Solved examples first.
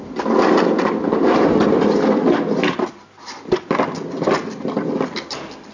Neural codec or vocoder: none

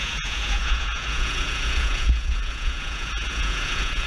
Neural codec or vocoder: vocoder, Vocos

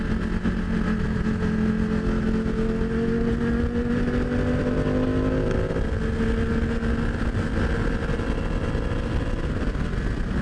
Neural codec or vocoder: none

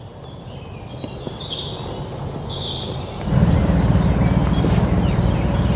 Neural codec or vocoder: none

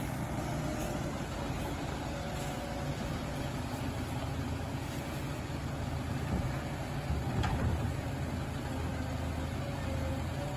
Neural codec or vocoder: none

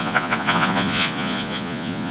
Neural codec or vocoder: vocoder, Vocos